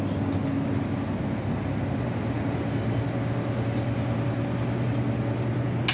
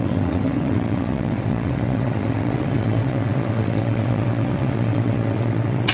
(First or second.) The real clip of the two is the first